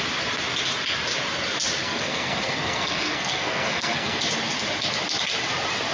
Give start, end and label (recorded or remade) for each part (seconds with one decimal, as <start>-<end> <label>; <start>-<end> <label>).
0.0-1.8 recorded; 1.8-4.2 remade; 4.2-5.9 recorded